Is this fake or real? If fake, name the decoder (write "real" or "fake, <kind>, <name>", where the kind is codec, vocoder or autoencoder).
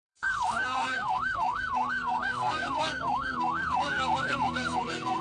fake, codec, SNAC